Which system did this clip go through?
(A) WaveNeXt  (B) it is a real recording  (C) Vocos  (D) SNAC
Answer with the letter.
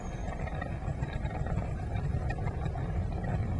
B